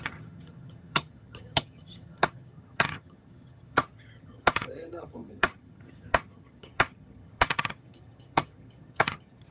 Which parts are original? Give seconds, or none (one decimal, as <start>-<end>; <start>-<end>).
none